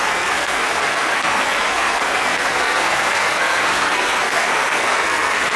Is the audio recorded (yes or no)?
no